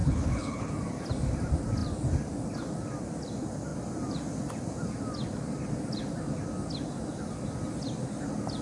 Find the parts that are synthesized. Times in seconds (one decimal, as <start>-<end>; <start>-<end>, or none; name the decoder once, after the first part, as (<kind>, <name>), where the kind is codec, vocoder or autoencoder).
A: 0.0-0.7 (codec, HILCodec)